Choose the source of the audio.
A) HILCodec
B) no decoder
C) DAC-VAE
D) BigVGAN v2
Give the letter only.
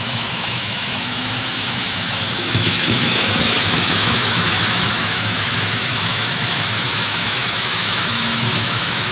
C